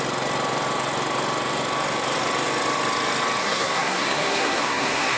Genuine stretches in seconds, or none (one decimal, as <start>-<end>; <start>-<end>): 0.0-3.4